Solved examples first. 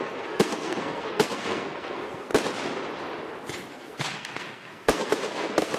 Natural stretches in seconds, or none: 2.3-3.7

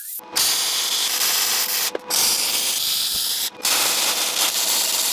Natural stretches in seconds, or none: 0.0-5.1

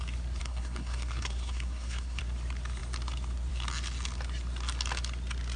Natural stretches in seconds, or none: 0.0-0.4; 2.2-5.6

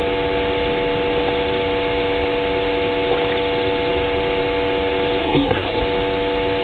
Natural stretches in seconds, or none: 0.0-5.2; 5.8-6.6

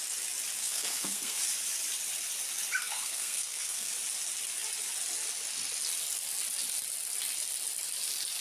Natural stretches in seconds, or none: 0.0-0.6; 1.4-2.8; 3.9-8.4

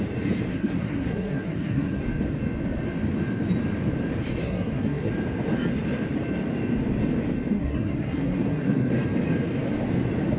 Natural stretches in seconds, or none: 0.0-0.5; 2.0-4.4; 5.1-7.5; 8.9-10.4

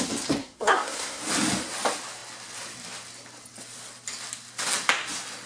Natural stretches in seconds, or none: 0.0-0.4; 1.2-5.5

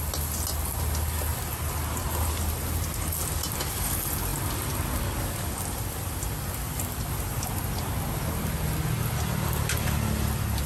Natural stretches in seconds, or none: 0.0-10.7